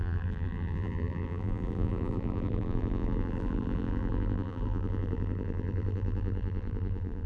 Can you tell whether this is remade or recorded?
remade